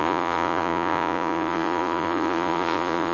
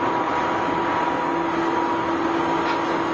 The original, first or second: second